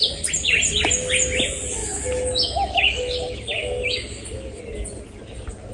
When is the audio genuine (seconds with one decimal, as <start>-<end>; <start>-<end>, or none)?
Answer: 0.0-1.8; 4.6-5.7